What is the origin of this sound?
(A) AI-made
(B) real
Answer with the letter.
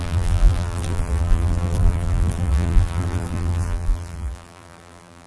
A